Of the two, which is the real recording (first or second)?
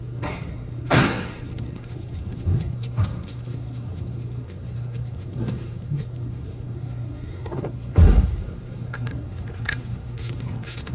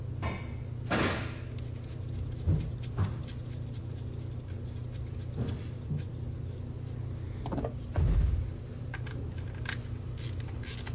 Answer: second